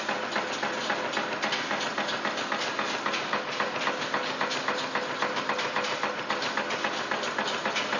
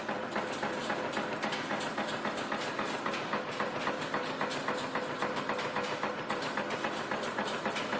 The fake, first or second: second